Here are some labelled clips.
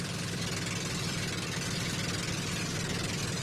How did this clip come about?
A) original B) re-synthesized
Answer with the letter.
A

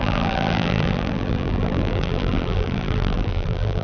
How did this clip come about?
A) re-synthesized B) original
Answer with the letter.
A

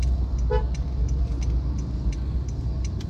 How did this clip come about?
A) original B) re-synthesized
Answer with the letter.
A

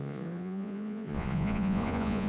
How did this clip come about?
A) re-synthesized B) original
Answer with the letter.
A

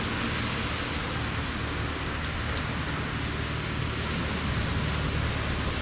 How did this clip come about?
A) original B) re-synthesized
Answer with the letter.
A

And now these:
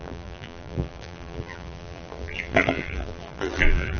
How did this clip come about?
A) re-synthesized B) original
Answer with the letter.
A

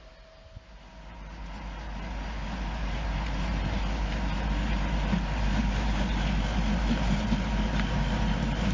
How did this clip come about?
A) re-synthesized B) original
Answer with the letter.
B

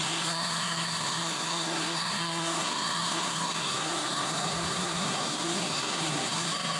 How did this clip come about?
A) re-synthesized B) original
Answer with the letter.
A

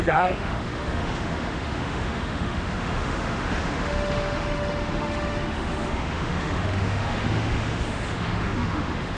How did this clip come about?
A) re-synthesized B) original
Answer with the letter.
A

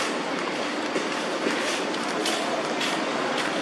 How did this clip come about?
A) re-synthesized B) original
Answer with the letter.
B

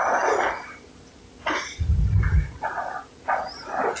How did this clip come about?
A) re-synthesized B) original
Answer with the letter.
A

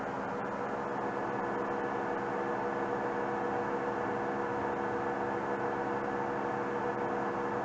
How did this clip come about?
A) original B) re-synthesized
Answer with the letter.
A